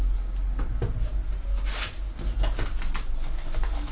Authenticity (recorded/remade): recorded